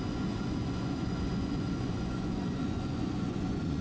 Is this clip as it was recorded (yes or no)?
no